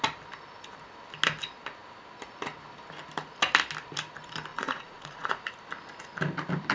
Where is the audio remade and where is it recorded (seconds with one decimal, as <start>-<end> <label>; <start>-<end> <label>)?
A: 0.0-4.5 recorded; 4.5-5.5 remade; 5.5-6.7 recorded